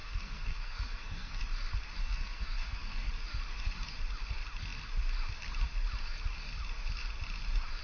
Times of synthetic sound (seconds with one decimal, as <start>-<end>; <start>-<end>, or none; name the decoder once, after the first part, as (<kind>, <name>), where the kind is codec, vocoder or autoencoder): 0.0-1.4 (codec, SNAC); 2.0-3.1

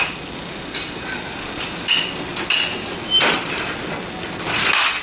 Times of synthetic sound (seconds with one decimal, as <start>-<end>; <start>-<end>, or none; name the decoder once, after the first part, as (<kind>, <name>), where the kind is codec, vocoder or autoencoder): none

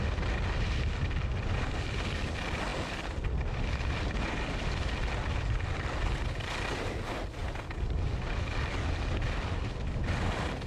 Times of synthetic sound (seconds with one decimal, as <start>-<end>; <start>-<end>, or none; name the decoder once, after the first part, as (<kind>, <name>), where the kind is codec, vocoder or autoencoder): none